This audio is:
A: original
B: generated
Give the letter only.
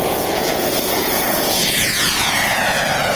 B